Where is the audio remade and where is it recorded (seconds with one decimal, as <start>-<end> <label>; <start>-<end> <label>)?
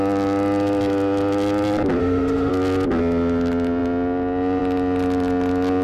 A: 0.0-2.0 recorded; 2.0-2.5 remade; 2.5-5.8 recorded